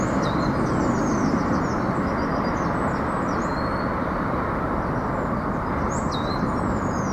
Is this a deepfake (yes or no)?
no